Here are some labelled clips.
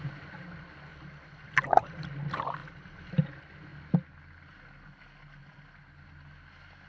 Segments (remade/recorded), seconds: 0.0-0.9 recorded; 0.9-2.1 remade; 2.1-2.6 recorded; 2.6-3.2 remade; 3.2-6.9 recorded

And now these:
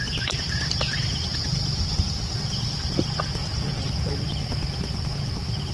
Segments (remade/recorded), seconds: 0.0-5.7 recorded